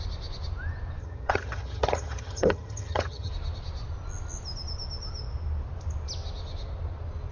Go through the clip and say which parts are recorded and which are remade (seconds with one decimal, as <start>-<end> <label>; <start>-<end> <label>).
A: 0.0-1.0 recorded; 1.0-3.3 remade; 3.3-7.3 recorded